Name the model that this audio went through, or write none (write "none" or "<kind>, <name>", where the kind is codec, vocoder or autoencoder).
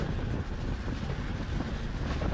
none